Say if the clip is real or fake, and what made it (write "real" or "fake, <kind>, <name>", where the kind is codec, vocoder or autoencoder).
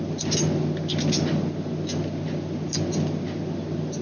real